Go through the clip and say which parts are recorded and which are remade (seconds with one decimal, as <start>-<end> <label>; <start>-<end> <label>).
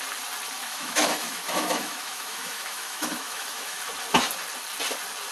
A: 0.0-0.6 recorded; 0.6-3.8 remade; 3.8-5.3 recorded